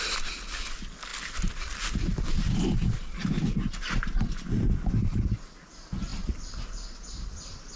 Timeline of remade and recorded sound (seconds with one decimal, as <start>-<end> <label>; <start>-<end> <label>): 0.0-7.8 recorded